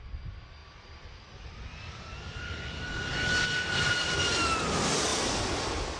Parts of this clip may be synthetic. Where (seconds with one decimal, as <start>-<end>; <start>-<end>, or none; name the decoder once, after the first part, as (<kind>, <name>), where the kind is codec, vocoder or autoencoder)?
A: 0.6-4.2 (vocoder, BigVGAN v2)